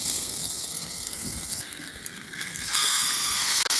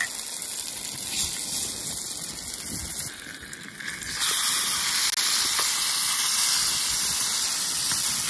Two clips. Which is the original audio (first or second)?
second